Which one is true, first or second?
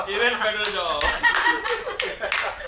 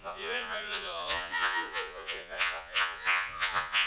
first